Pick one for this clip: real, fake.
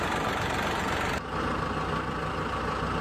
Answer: real